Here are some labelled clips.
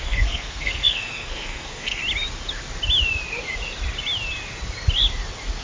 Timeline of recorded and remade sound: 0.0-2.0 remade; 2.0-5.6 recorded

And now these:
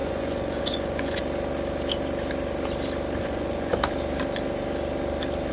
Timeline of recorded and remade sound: 0.0-1.2 remade; 1.2-3.2 recorded; 3.2-3.7 remade; 3.7-5.5 recorded

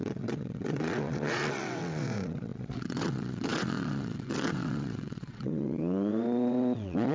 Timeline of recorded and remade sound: 0.0-7.1 remade

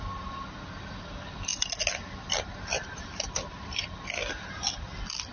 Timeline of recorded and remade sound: 0.0-5.3 recorded

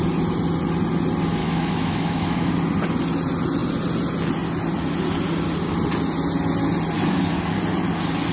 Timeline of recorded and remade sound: 0.0-1.4 recorded; 1.4-2.5 remade; 2.5-8.3 recorded

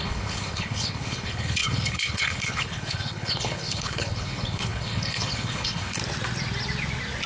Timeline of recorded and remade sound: 0.0-6.0 remade; 6.0-7.3 recorded